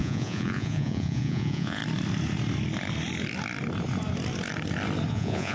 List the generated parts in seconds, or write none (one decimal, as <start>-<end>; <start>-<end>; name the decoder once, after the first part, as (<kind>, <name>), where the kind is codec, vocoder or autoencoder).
0.0-1.8 (vocoder, Vocos); 5.1-5.5